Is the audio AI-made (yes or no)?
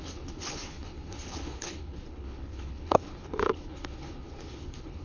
yes